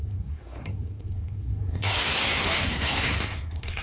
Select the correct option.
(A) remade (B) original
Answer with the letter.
A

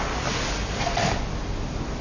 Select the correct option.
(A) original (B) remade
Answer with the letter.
A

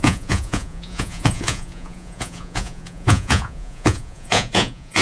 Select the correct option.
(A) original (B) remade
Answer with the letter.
B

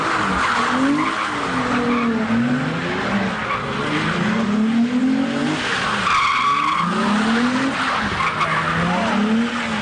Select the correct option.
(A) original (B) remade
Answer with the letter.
A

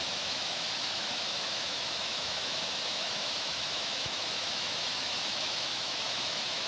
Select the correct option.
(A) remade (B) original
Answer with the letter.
A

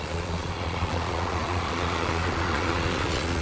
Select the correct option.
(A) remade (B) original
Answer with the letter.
A